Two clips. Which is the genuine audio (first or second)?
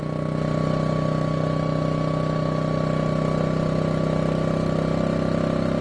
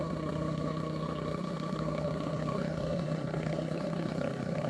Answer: first